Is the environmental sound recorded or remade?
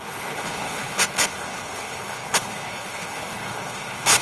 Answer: remade